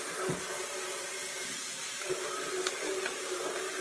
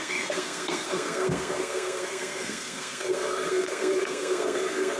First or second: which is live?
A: first